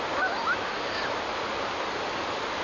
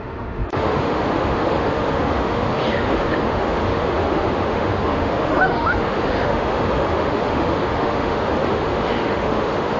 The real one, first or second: first